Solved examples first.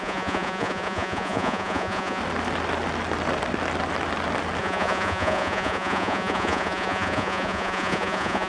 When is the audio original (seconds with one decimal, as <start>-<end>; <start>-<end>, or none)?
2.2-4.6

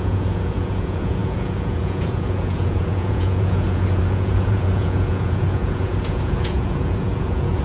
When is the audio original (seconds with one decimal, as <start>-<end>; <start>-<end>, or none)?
none

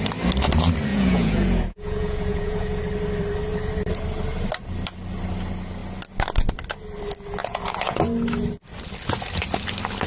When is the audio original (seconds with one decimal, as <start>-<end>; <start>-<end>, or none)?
0.0-0.9; 2.8-7.4; 8.0-10.1